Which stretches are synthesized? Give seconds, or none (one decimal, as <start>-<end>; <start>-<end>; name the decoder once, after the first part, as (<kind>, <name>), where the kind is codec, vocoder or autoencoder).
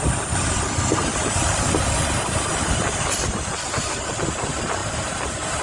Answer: none